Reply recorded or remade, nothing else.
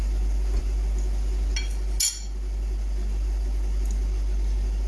recorded